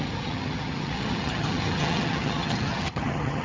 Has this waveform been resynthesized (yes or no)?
yes